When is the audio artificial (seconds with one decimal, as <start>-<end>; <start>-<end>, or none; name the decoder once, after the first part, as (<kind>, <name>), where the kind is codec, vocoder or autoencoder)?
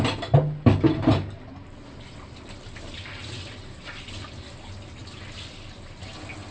none